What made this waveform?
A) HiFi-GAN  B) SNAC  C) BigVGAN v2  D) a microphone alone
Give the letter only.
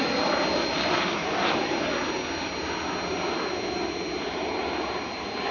D